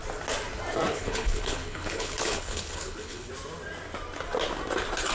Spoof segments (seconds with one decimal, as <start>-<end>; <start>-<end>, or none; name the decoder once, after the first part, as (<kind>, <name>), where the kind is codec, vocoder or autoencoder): 0.9-3.3 (codec, HILCodec)